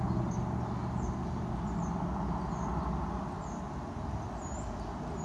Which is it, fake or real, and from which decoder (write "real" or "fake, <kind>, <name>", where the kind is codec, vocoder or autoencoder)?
real